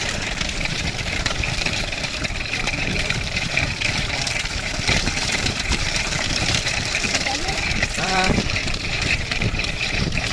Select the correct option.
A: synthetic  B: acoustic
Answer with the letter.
A